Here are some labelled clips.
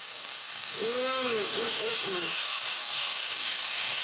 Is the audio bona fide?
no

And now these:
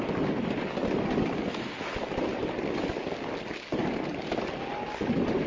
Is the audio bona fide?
yes